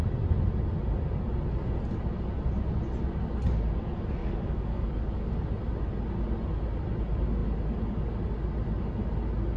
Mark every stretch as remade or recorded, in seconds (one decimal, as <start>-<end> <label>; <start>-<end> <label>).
0.0-4.2 recorded; 4.2-5.3 remade; 5.3-9.6 recorded